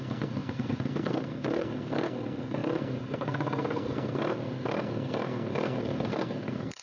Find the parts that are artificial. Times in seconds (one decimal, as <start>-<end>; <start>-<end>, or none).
0.0-6.8